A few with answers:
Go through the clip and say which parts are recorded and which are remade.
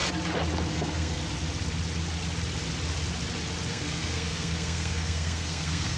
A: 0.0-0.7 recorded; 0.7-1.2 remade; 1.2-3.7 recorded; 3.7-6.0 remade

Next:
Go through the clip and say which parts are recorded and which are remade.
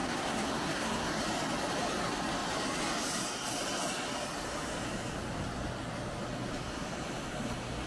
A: 0.0-1.2 remade; 1.2-7.9 recorded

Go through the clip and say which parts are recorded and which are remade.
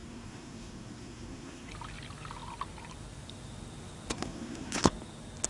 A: 0.0-1.7 remade; 1.7-4.1 recorded; 4.1-4.9 remade; 4.9-5.5 recorded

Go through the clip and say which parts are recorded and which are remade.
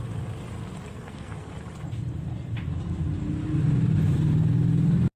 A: 0.0-0.9 recorded; 0.9-1.5 remade; 1.5-5.2 recorded